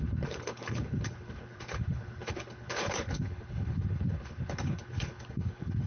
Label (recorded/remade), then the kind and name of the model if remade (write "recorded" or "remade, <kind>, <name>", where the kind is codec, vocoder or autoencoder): remade, codec, HILCodec